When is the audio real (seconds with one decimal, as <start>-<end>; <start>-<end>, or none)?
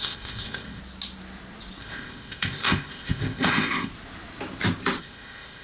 0.8-1.8; 3.9-5.0